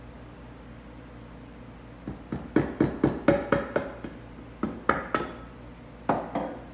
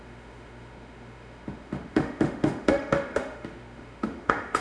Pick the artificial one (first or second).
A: second